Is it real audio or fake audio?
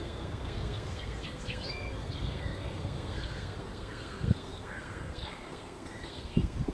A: fake